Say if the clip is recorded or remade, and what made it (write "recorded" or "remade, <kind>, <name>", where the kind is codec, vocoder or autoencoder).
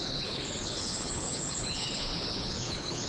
remade, codec, HILCodec